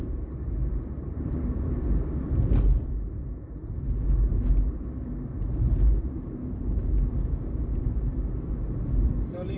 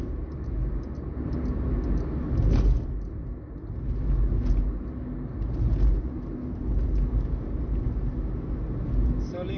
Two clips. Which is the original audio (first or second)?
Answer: second